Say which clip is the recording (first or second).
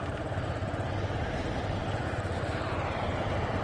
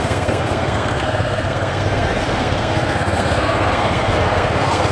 first